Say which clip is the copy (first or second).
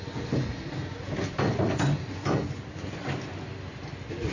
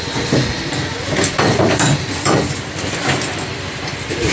second